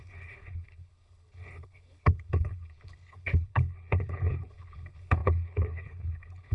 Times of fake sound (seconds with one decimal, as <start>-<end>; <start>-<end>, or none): 0.0-6.5